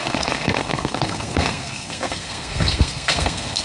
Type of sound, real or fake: fake